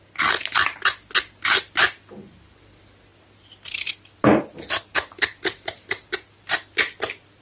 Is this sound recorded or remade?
recorded